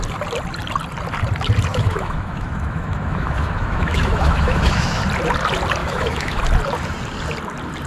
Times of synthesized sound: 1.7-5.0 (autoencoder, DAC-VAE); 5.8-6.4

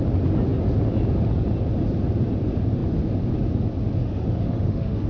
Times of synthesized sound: 4.0-5.1 (autoencoder, DAC-VAE)

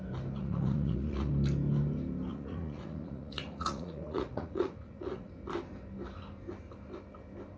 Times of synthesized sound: 0.4-1.3 (vocoder, Vocos); 2.3-5.3

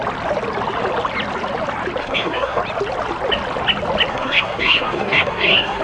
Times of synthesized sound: 2.0-2.6 (codec, SNAC); 4.1-5.8